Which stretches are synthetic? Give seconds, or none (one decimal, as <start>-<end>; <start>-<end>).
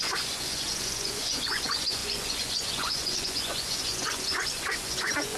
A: 0.0-5.4